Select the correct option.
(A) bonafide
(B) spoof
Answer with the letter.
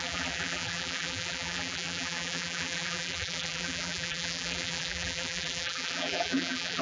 B